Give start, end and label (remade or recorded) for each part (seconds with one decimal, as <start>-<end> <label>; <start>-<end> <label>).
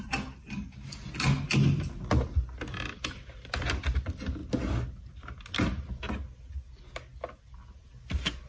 0.0-8.5 recorded